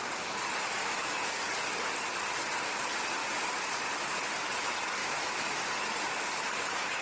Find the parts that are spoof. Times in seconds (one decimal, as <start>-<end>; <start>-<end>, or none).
0.8-1.4; 5.0-5.7